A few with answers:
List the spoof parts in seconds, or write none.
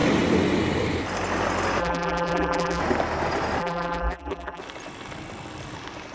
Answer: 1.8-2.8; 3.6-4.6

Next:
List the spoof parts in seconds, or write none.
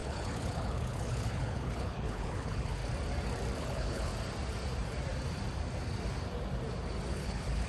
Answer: 0.0-2.8; 3.6-4.1; 7.1-7.7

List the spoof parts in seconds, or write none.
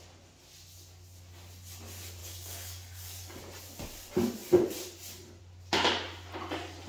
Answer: 2.2-3.4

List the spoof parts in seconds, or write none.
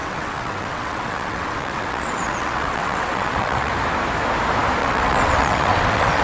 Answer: 0.0-3.7; 4.8-6.2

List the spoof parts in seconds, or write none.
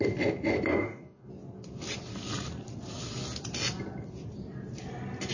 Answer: 0.7-1.3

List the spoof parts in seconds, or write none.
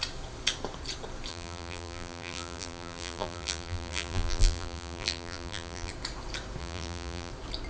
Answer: 1.3-5.9; 6.6-7.3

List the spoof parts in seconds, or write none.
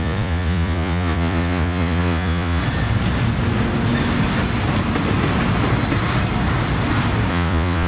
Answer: 0.0-2.6; 7.3-7.9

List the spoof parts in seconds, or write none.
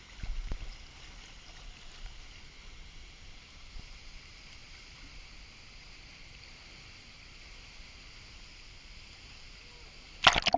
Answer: none